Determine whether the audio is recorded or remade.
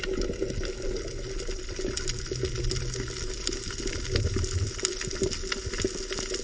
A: recorded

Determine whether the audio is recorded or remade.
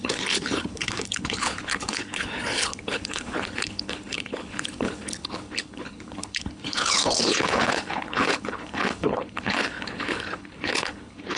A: remade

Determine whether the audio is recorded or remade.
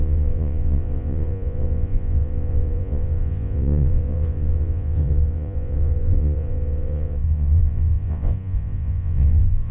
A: remade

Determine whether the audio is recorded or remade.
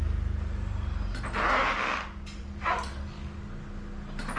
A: recorded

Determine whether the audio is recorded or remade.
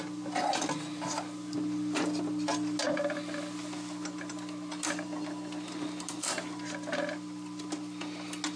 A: recorded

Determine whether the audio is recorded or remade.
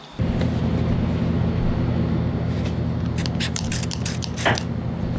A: recorded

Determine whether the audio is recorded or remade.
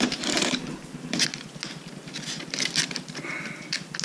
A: recorded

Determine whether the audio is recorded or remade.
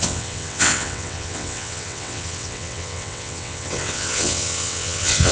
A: remade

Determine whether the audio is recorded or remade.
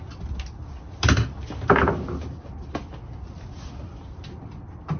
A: recorded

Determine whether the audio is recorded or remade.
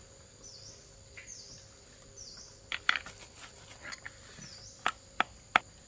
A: recorded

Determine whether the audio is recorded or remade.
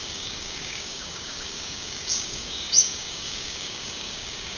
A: remade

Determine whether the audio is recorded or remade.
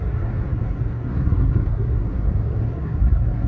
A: remade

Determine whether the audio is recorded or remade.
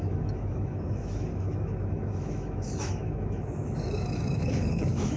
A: remade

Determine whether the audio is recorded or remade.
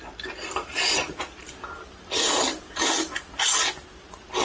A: recorded